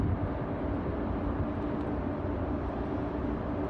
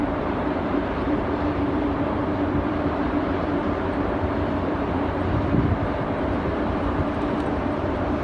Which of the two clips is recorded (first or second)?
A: first